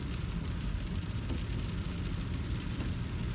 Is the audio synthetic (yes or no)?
no